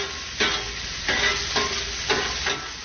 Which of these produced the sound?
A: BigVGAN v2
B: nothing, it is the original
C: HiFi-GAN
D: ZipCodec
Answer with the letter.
B